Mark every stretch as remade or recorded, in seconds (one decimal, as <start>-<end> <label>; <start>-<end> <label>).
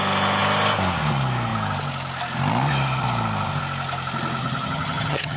0.0-4.4 recorded; 4.4-5.4 remade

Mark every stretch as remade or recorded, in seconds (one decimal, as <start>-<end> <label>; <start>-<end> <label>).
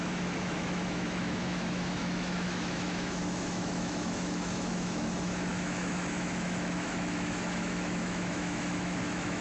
0.0-9.4 remade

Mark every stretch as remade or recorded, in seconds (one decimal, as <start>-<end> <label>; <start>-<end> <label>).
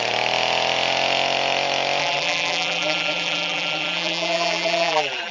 0.0-2.0 recorded; 2.0-5.3 remade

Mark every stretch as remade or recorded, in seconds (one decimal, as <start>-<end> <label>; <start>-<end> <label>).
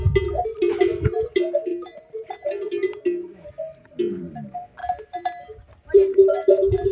0.0-1.7 recorded; 1.7-2.3 remade; 2.3-4.8 recorded; 4.8-6.5 remade; 6.5-6.9 recorded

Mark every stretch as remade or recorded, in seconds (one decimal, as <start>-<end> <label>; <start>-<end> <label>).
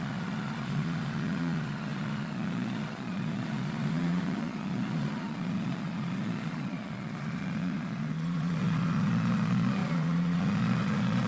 0.0-11.3 remade